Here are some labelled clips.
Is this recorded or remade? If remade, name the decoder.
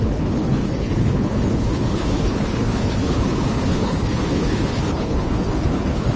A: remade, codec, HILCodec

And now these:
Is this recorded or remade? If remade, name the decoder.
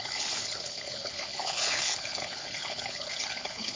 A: remade, codec, HILCodec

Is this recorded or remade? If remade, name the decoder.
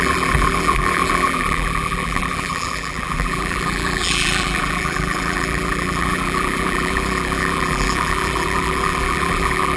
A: remade, vocoder, BigVGAN v2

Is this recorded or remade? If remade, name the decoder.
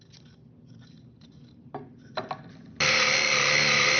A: recorded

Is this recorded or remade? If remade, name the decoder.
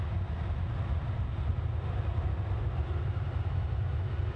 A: recorded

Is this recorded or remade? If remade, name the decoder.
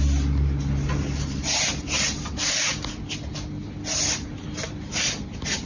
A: recorded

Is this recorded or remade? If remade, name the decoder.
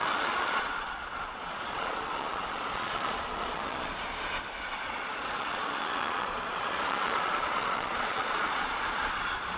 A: remade, vocoder, Vocos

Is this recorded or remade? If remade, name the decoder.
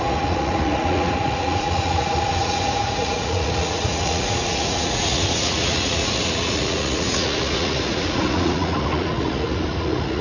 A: remade, vocoder, Vocos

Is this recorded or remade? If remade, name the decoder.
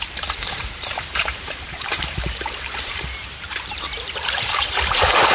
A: remade, vocoder, BigVGAN v2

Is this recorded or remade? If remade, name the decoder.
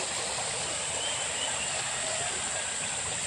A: recorded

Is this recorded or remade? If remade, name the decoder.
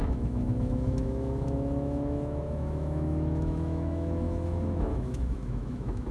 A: remade, autoencoder, DAC-VAE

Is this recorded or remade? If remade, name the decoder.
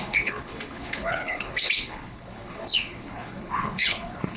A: remade, codec, HILCodec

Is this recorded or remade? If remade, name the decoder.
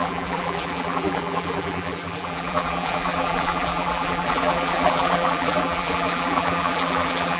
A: remade, vocoder, BigVGAN v2